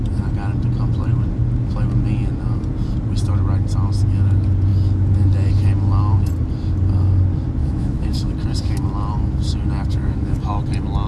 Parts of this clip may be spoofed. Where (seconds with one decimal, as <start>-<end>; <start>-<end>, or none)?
7.6-8.3; 9.9-10.5